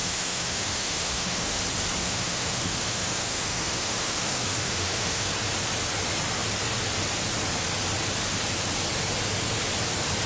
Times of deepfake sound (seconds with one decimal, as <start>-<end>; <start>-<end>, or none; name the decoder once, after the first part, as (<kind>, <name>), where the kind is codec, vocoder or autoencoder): 0.0-1.6 (autoencoder, DAC-VAE); 2.0-5.3